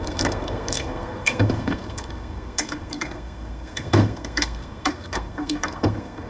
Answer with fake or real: fake